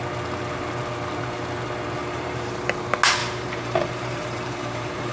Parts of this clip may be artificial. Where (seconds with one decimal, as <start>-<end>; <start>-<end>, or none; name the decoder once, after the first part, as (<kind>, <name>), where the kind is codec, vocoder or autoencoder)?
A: 2.0-2.6 (vocoder, BigVGAN v2); 3.2-5.1